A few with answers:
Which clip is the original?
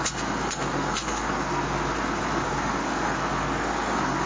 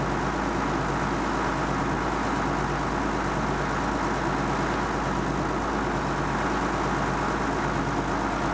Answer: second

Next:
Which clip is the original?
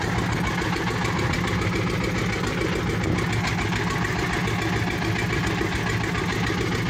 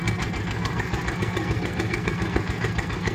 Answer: first